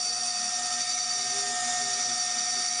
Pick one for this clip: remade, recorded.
recorded